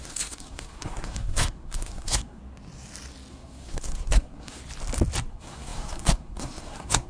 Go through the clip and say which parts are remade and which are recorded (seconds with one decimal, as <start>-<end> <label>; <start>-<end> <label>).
0.0-2.4 remade; 2.4-3.3 recorded; 3.3-4.6 remade; 4.6-5.3 recorded; 5.3-7.1 remade